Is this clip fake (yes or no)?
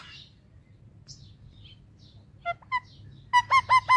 no